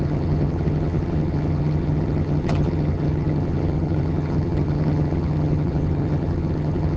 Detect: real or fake fake